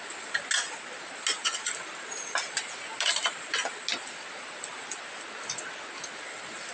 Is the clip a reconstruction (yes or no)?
no